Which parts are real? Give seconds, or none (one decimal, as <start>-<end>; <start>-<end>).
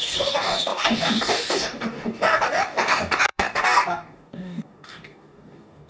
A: none